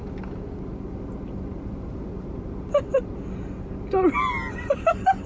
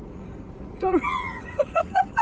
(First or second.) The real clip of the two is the first